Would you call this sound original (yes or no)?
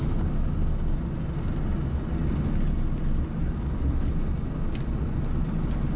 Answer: yes